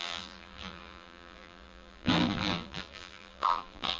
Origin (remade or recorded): remade